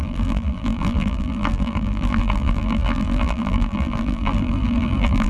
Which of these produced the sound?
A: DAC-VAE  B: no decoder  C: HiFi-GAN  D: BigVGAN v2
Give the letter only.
D